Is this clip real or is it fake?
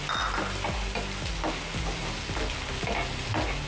real